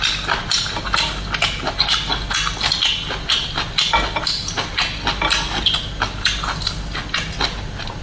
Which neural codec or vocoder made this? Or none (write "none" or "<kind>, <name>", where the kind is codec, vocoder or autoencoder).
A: none